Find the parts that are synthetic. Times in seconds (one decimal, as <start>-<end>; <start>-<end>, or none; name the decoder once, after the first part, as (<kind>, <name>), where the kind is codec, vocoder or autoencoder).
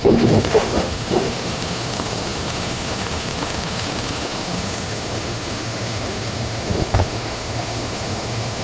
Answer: 0.0-8.6 (autoencoder, DAC-VAE)